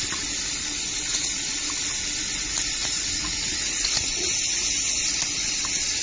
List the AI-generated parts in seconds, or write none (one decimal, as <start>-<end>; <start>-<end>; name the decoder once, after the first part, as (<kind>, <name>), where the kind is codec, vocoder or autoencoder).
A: 1.1-1.6 (vocoder, Vocos); 2.8-5.0